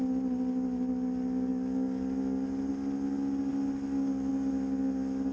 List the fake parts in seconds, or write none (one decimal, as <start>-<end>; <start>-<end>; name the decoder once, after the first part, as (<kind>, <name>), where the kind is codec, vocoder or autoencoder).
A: none